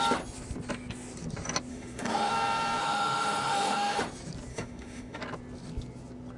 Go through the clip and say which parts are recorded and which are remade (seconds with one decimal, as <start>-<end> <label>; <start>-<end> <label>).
0.0-1.7 recorded; 1.7-2.3 remade; 2.3-2.8 recorded; 2.8-4.0 remade; 4.0-4.5 recorded; 4.5-5.2 remade; 5.2-6.4 recorded